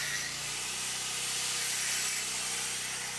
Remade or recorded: recorded